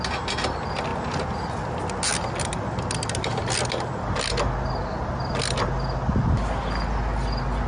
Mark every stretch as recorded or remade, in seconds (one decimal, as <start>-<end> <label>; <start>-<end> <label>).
0.0-7.7 recorded